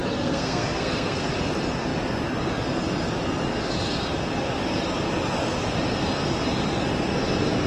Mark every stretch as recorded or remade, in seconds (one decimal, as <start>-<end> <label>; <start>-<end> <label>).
0.0-1.3 remade; 1.3-7.7 recorded